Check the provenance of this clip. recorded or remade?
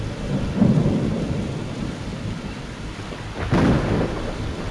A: recorded